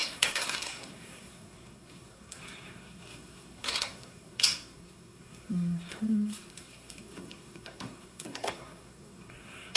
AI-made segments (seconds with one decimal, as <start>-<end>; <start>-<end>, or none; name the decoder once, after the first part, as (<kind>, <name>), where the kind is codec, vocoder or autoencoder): 0.0-9.8 (codec, SNAC)